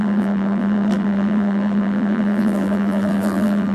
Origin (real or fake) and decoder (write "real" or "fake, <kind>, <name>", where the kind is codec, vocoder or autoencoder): fake, vocoder, BigVGAN v2